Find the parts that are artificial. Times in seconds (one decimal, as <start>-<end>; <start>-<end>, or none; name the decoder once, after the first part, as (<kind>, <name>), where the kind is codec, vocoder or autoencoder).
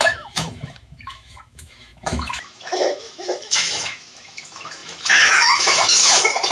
0.0-6.5 (autoencoder, DAC-VAE)